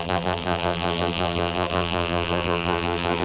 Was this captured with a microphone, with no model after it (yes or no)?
no